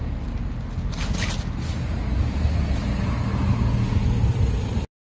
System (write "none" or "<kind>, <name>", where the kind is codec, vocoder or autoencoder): none